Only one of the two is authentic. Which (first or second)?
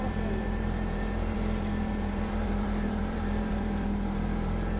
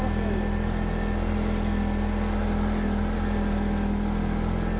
second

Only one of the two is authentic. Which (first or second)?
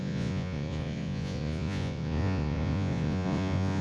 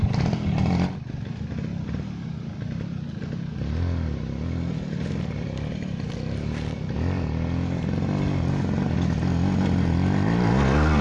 second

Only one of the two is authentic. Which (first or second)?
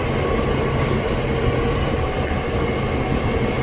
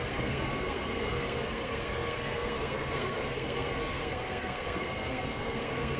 first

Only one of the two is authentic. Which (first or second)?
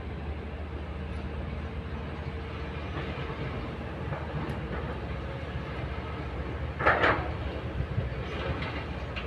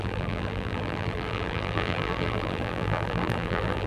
first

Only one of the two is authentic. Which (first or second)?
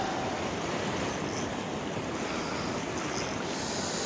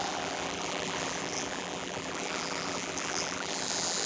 first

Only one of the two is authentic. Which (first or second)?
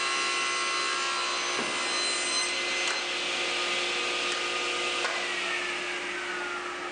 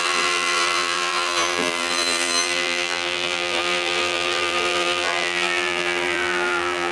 first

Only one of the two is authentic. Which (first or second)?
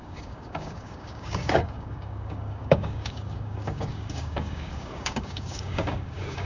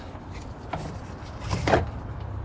second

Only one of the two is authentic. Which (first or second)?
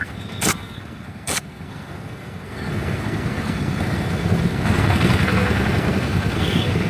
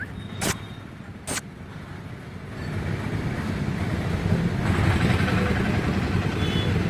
second